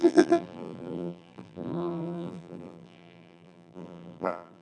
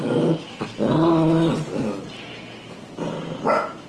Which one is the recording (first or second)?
second